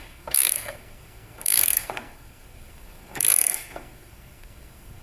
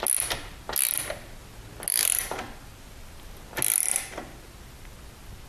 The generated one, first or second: first